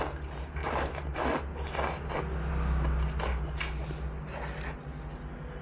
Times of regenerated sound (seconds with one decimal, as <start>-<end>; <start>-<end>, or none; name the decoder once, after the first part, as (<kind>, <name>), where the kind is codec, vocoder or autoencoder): none